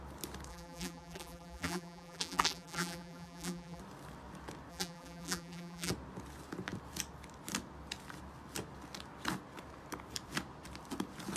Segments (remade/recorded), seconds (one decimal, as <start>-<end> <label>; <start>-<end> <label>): 0.0-0.5 recorded; 0.5-3.8 remade; 3.8-4.7 recorded; 4.7-5.9 remade; 5.9-11.4 recorded